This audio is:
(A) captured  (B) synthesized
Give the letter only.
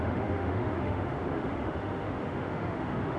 B